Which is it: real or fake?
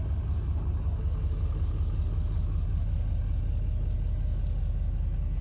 real